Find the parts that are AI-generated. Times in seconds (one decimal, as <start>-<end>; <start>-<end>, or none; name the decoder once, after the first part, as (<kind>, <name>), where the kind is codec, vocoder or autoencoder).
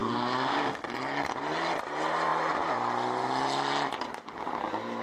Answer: 0.0-0.8 (codec, SNAC)